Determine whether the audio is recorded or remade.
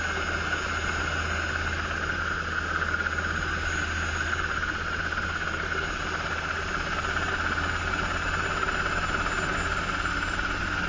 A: recorded